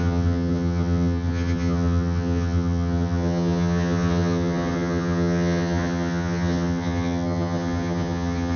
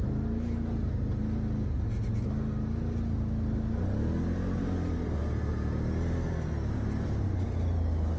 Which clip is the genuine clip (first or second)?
second